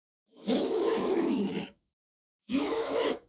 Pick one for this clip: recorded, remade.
remade